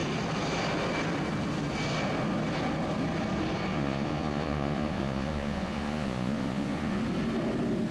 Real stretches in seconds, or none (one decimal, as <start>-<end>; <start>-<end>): 0.0-3.7; 7.0-7.9